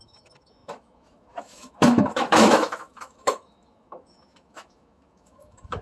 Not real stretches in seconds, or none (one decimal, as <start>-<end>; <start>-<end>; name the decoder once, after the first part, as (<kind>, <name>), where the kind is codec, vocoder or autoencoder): 0.0-5.8 (autoencoder, DAC-VAE)